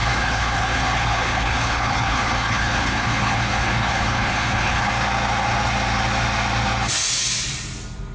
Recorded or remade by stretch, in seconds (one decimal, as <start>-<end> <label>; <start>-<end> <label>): 0.0-4.9 remade; 4.9-8.1 recorded